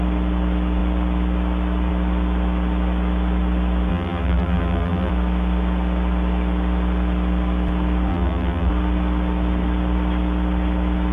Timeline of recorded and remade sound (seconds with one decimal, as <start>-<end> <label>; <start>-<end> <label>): 0.0-3.9 recorded; 3.9-5.1 remade; 5.1-8.1 recorded; 8.1-8.7 remade; 8.7-11.1 recorded

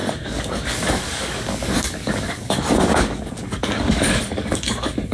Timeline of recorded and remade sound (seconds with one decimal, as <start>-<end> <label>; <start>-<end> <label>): 0.0-5.1 remade

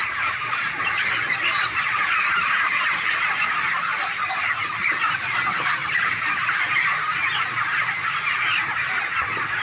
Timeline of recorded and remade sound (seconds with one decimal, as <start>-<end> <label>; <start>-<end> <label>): 0.0-5.8 recorded; 5.8-6.8 remade; 6.8-9.6 recorded

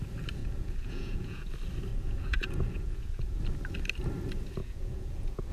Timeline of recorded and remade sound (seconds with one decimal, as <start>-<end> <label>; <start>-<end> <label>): 0.0-0.4 recorded; 0.4-1.5 remade; 1.5-1.9 recorded; 1.9-3.4 remade; 3.4-4.6 recorded; 4.6-5.5 remade

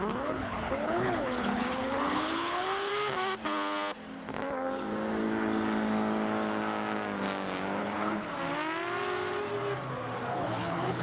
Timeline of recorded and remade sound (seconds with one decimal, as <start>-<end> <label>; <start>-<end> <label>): 0.0-2.9 remade; 2.9-7.8 recorded; 7.8-8.3 remade; 8.3-10.3 recorded; 10.3-11.0 remade

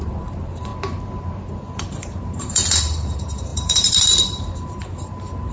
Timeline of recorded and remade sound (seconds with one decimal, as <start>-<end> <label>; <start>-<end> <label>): 0.0-0.7 remade; 0.7-1.8 recorded; 1.8-5.5 remade